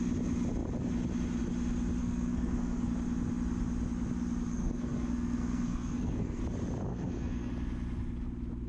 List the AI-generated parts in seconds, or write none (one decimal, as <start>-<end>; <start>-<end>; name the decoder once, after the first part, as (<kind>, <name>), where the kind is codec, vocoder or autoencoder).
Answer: 2.0-2.9 (codec, SNAC); 4.5-6.4; 6.9-7.5